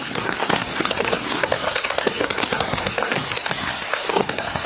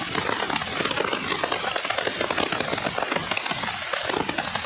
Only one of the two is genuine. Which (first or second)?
second